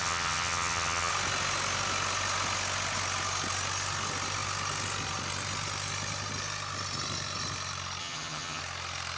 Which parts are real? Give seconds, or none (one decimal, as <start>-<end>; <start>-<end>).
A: 1.1-8.0; 8.6-9.2